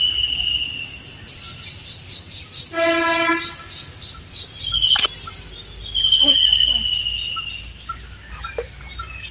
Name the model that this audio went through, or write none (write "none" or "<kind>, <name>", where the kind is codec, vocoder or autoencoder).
none